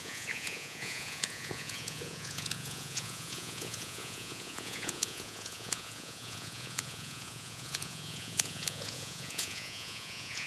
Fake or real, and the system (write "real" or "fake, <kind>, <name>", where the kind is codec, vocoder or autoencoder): fake, vocoder, Vocos